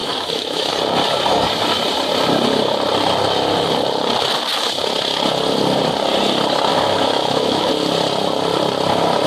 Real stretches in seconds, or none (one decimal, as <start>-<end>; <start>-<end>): 0.7-6.7; 7.7-9.3